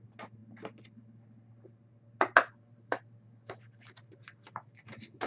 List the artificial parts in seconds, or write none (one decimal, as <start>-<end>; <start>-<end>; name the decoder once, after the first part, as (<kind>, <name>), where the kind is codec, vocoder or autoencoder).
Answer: none